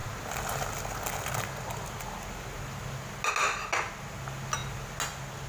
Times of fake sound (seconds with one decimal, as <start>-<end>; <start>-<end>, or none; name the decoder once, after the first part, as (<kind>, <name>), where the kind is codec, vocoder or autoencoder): none